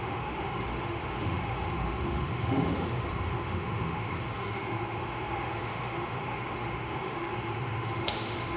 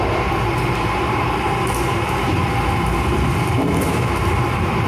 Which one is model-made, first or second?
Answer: first